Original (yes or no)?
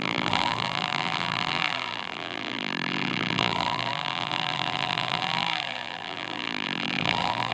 no